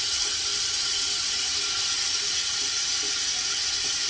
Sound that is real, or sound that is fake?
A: real